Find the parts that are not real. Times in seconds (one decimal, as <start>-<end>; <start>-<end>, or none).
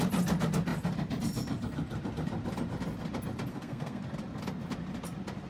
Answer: 3.5-4.0